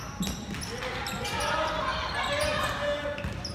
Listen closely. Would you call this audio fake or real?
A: real